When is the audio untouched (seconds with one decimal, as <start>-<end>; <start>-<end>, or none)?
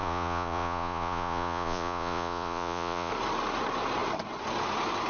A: 3.1-5.1